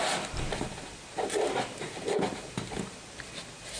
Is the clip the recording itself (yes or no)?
yes